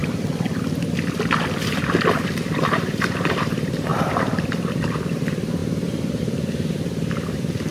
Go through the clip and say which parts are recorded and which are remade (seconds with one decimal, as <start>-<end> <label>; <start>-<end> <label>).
0.0-2.2 recorded; 2.2-5.6 remade; 5.6-6.2 recorded; 6.2-7.7 remade